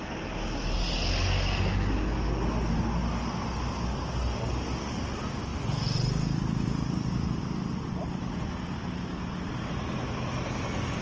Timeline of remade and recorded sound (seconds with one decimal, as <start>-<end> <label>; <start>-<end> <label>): 0.0-11.0 recorded

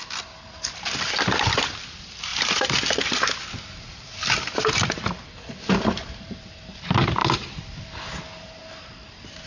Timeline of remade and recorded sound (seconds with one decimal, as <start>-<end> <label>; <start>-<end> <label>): 0.0-9.5 recorded

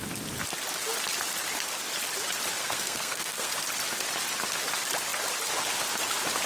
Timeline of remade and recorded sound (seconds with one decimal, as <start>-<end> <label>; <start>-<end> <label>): 0.0-2.6 recorded; 2.6-3.5 remade; 3.5-6.5 recorded

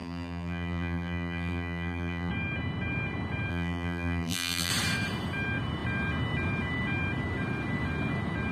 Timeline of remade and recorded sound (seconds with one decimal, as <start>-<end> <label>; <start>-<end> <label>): 0.0-2.3 remade; 2.3-3.5 recorded; 3.5-4.7 remade; 4.7-8.5 recorded

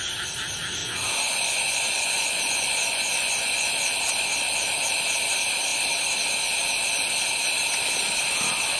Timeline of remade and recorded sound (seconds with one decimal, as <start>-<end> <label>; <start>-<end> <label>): 0.0-0.8 recorded; 0.8-3.7 remade; 3.7-8.8 recorded

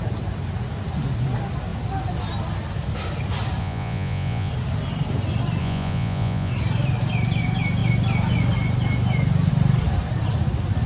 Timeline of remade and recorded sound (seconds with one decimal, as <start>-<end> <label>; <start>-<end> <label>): 0.0-3.6 recorded; 3.6-4.5 remade; 4.5-5.6 recorded; 5.6-6.5 remade; 6.5-10.9 recorded